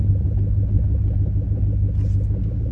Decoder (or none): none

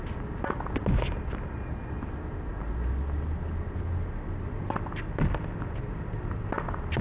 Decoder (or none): none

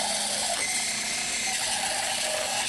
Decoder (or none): none